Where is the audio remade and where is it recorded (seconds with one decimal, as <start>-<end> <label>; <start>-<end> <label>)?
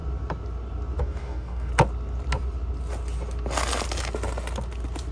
0.0-1.0 recorded; 1.0-1.7 remade; 1.7-5.1 recorded